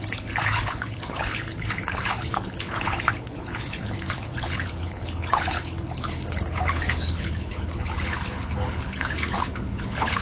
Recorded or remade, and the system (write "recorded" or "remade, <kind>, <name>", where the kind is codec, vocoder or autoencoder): remade, codec, HILCodec